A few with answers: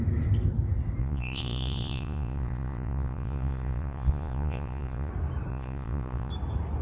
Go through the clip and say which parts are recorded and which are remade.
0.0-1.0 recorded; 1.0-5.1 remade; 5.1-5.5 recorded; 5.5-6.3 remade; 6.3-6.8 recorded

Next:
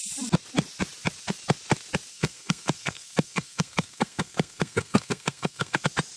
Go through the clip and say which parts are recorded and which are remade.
0.0-2.1 recorded; 2.1-5.8 remade; 5.8-6.2 recorded

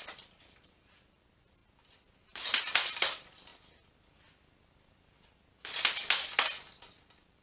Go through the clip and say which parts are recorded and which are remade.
0.0-1.6 remade; 1.6-2.7 recorded; 2.7-3.5 remade; 3.5-6.4 recorded; 6.4-7.4 remade

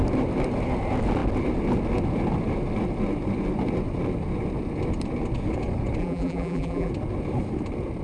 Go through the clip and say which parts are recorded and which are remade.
0.0-6.0 recorded; 6.0-6.9 remade; 6.9-8.0 recorded